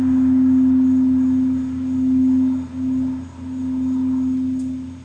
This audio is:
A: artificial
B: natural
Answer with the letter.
B